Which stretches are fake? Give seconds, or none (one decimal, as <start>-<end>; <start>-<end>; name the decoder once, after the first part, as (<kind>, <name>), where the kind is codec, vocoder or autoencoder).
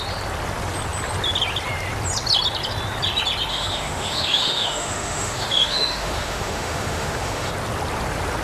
3.5-7.5 (autoencoder, DAC-VAE)